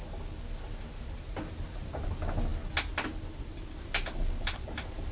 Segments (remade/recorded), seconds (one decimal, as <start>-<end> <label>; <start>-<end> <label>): 0.0-5.1 recorded